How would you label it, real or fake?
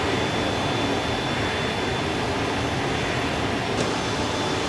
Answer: real